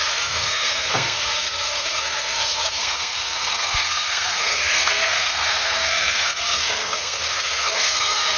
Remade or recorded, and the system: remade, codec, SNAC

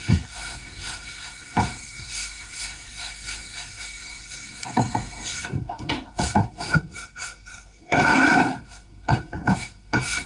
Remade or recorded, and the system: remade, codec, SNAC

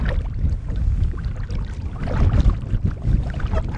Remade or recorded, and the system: recorded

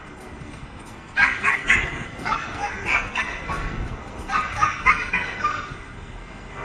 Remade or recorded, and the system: remade, codec, SNAC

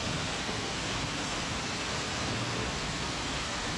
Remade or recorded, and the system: remade, codec, SNAC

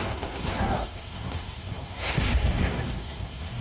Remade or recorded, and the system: remade, codec, SNAC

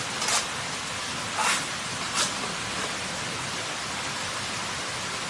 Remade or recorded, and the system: recorded